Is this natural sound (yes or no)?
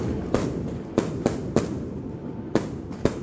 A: yes